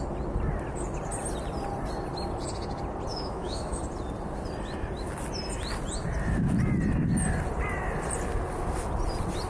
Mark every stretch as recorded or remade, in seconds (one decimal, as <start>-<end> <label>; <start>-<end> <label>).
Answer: 0.0-3.1 recorded; 3.1-3.8 remade; 3.8-9.5 recorded